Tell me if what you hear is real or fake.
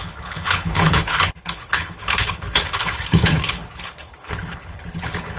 fake